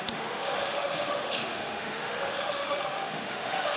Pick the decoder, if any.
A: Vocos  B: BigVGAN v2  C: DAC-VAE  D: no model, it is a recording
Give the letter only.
C